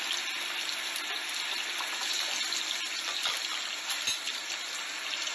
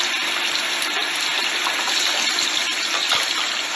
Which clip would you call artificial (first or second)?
second